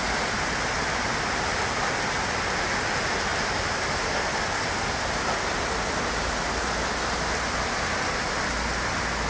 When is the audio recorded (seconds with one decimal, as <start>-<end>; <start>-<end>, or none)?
0.0-9.3